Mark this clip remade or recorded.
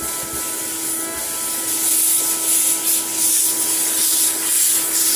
recorded